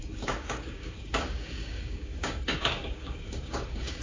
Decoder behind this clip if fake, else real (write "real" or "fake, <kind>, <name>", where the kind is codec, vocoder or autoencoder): fake, codec, DAC